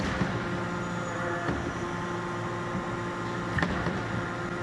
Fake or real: real